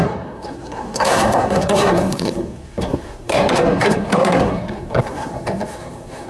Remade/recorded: remade